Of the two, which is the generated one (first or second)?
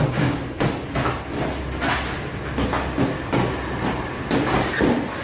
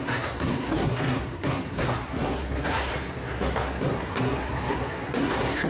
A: second